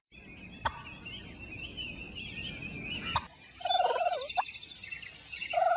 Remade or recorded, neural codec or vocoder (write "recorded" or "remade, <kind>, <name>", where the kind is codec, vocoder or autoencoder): recorded